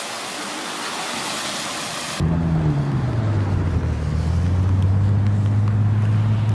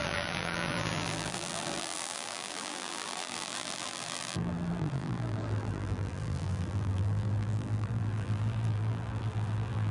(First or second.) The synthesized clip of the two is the second